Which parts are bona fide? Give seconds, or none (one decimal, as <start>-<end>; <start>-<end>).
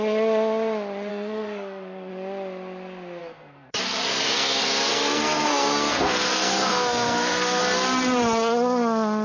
0.0-1.1; 2.1-3.2; 7.6-9.2